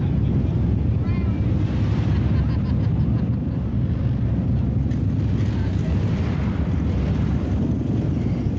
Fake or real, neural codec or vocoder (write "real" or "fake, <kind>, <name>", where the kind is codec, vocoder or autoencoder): real